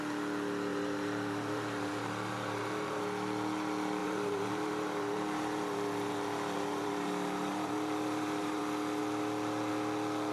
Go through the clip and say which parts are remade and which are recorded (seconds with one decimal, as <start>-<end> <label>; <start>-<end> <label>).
0.0-0.7 recorded; 0.7-3.0 remade; 3.0-4.0 recorded; 4.0-8.6 remade; 8.6-10.3 recorded